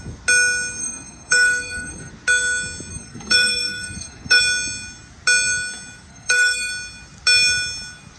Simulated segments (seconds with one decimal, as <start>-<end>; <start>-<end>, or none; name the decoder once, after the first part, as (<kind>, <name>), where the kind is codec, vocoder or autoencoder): 0.8-2.1 (codec, SNAC); 2.9-4.4; 6.1-6.7